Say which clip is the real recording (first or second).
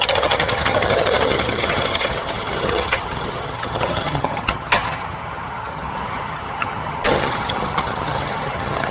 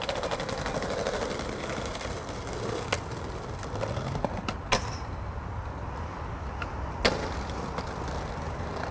second